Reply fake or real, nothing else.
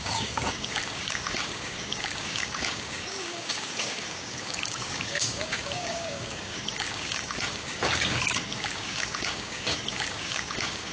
fake